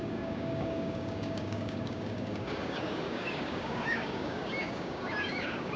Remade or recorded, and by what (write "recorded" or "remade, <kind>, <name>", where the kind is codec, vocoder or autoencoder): remade, codec, DAC